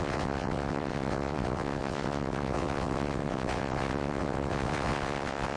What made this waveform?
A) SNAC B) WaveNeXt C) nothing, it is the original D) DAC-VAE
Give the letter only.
B